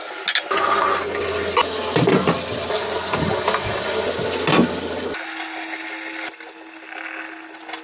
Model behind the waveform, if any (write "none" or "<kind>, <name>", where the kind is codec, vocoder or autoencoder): none